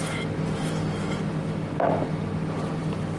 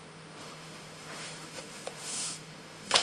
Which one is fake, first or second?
second